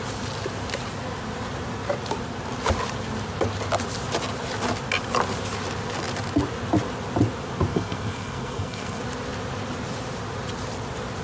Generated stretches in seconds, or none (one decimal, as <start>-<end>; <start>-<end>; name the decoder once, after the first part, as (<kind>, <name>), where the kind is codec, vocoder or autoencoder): 7.7-9.0 (codec, SNAC)